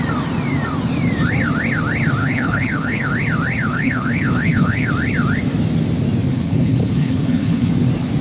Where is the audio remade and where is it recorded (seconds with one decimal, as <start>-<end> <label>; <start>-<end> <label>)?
0.0-2.2 recorded; 2.2-3.1 remade; 3.1-3.7 recorded; 3.7-4.9 remade; 4.9-6.3 recorded; 6.3-7.7 remade; 7.7-8.2 recorded